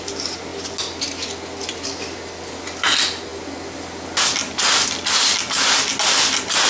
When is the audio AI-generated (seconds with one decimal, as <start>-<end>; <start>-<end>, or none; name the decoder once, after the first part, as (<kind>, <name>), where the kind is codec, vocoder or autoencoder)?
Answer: none